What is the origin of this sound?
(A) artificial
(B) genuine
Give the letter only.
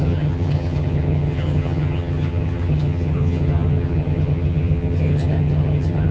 A